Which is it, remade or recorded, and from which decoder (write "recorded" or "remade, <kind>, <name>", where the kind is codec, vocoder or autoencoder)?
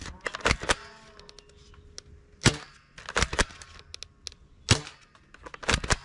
recorded